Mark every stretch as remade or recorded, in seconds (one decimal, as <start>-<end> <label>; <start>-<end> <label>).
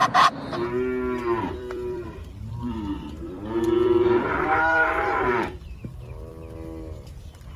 0.0-1.4 recorded; 1.4-6.3 remade; 6.3-6.9 recorded; 6.9-7.6 remade